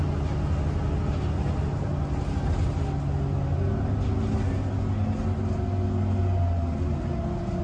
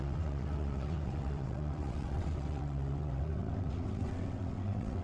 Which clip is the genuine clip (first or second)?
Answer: first